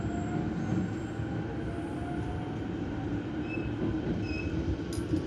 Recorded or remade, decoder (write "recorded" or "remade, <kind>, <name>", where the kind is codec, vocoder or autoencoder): recorded